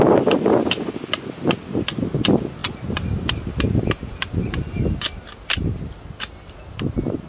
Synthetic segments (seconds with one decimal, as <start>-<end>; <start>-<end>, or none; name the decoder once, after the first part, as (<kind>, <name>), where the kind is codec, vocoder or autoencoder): none